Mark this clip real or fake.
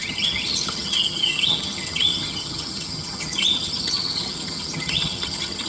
fake